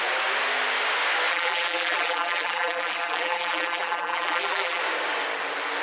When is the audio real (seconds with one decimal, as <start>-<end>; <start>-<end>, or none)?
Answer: 0.0-1.3; 4.8-5.8